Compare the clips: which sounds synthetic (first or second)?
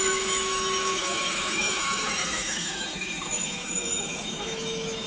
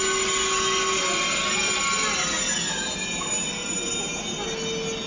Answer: first